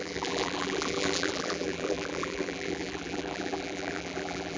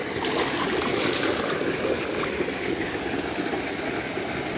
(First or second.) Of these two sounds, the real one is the second